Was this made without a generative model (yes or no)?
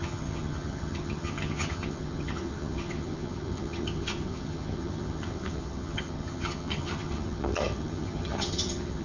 no